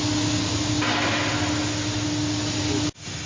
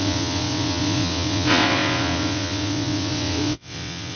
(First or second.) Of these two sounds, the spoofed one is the second